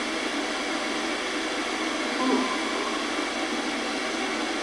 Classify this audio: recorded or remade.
recorded